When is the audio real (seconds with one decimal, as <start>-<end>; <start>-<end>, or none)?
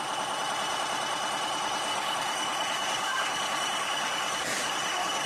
0.0-1.9